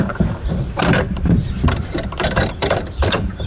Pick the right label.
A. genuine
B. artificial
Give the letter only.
B